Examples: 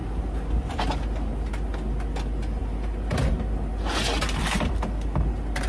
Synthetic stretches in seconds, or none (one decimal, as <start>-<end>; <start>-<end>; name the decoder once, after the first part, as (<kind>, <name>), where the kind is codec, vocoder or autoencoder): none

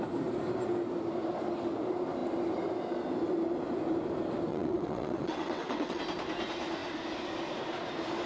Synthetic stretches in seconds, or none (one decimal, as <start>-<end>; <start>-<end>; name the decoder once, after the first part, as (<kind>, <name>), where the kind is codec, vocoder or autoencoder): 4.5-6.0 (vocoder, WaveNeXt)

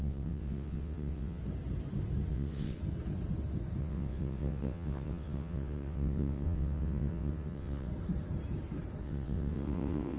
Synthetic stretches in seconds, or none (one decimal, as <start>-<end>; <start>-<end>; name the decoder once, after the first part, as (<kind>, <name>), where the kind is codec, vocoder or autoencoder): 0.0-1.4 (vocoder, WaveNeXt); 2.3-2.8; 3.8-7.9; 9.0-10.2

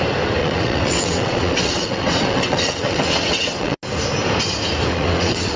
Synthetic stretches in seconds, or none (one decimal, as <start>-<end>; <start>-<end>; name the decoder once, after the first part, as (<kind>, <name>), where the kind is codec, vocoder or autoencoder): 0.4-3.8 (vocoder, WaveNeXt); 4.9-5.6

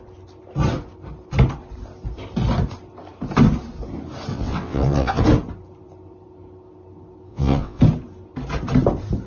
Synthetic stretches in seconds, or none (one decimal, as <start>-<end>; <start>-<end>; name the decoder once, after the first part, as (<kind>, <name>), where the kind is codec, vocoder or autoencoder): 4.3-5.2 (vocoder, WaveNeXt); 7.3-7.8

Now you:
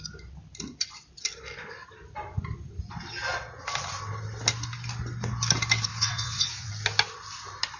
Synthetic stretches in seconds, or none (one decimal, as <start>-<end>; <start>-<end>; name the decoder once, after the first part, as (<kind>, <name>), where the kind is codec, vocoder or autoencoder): 5.9-6.7 (vocoder, WaveNeXt)

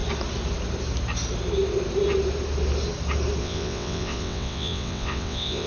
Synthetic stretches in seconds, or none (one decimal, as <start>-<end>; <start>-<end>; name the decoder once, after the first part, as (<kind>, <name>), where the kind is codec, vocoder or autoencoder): 3.4-5.7 (vocoder, WaveNeXt)

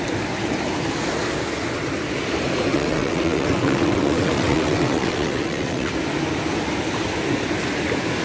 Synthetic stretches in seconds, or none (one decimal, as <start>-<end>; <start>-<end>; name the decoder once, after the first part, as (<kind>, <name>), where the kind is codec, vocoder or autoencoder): 2.7-5.9 (vocoder, WaveNeXt)